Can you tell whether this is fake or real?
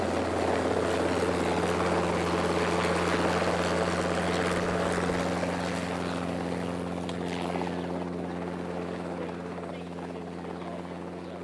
real